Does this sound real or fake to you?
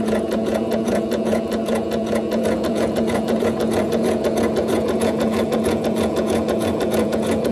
fake